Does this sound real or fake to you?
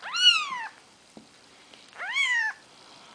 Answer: fake